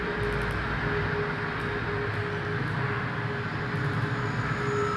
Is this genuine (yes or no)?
yes